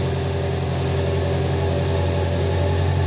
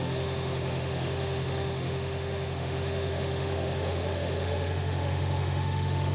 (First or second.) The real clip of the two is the first